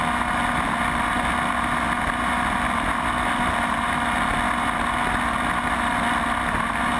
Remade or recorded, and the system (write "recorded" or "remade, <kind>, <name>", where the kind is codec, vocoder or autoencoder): recorded